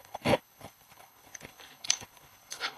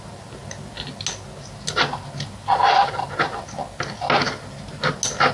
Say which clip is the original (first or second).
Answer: second